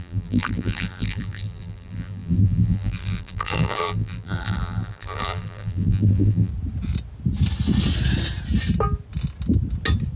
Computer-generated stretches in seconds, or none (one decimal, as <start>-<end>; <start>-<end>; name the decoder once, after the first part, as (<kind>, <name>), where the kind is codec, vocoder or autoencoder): 0.0-6.5 (vocoder, BigVGAN v2)